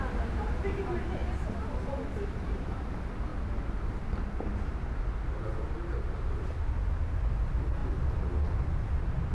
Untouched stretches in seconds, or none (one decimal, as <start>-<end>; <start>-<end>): 0.0-3.3; 4.3-7.8